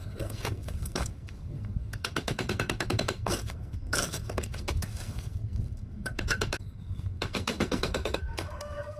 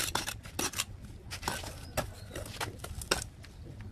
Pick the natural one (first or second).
second